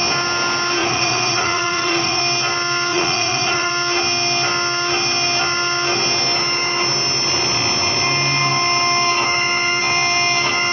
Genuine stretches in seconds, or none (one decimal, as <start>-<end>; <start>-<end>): 0.0-0.8; 2.2-2.9; 3.7-10.7